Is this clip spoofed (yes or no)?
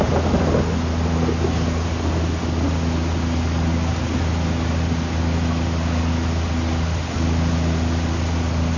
no